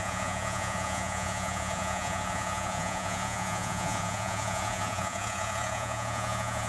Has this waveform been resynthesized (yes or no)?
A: yes